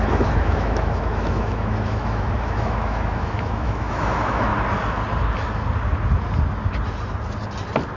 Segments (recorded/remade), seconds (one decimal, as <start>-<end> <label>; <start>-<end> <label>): 0.0-4.5 remade; 4.5-8.0 recorded